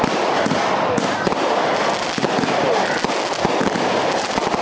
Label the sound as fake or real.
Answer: real